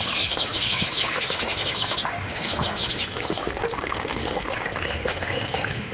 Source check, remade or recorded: remade